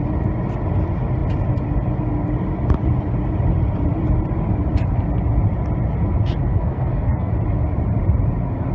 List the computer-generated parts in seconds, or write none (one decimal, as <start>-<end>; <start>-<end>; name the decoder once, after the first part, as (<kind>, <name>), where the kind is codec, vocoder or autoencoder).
6.5-7.3 (codec, SNAC)

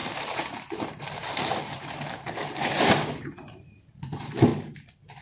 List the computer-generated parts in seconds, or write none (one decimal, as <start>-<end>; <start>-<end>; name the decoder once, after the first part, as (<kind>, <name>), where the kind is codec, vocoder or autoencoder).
0.0-4.5 (vocoder, BigVGAN v2)

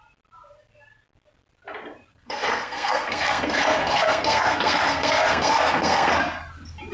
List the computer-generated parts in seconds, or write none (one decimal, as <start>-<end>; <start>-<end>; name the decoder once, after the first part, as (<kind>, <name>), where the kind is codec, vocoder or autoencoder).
2.1-6.2 (codec, SNAC)